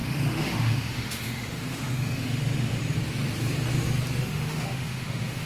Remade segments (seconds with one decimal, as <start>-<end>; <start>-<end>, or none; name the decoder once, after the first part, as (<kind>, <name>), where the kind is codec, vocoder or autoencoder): 0.0-2.8 (autoencoder, DAC-VAE); 4.2-5.5